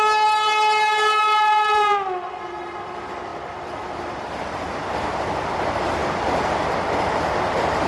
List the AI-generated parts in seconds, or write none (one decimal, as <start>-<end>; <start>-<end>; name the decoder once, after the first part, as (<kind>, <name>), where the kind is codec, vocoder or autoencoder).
3.3-4.4 (vocoder, BigVGAN v2)